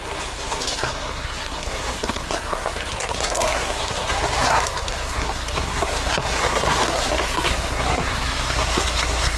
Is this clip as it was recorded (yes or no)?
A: no